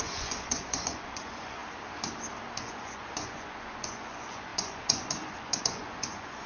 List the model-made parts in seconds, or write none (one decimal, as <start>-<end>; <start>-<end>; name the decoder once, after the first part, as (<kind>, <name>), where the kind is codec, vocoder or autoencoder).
0.0-1.6 (vocoder, Vocos); 2.6-6.5